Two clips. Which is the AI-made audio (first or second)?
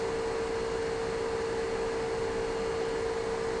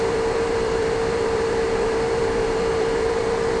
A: second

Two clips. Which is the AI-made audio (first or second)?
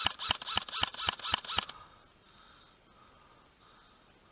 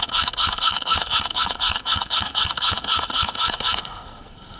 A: second